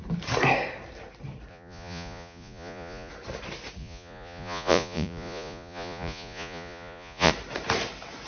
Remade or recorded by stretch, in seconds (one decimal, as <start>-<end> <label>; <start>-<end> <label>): 0.0-1.5 recorded; 1.5-3.1 remade; 3.1-3.8 recorded; 3.8-7.3 remade; 7.3-8.3 recorded